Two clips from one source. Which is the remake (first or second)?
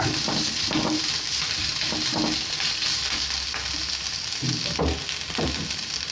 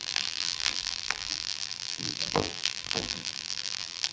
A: second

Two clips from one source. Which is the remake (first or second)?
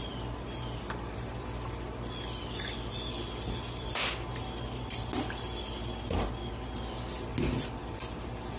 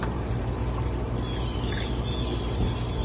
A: second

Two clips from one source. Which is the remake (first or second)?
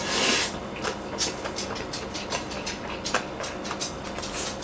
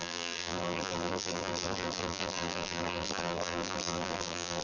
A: second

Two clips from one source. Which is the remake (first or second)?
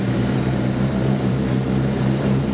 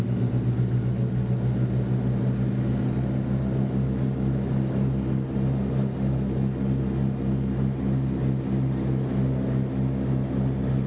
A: first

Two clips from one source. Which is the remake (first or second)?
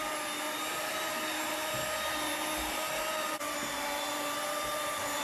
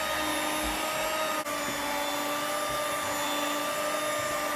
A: first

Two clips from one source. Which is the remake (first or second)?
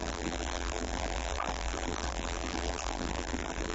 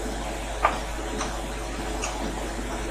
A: first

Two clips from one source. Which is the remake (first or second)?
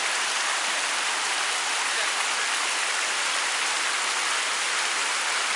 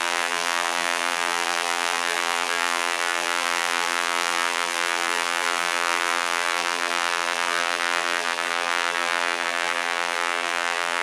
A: second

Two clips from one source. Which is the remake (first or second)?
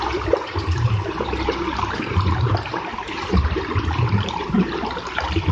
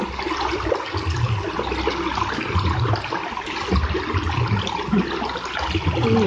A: first